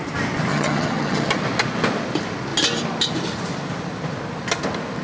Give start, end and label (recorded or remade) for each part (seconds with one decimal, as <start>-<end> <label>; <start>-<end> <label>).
0.0-0.5 recorded; 0.5-1.3 remade; 1.3-5.0 recorded